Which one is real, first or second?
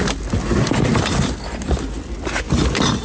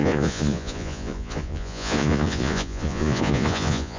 first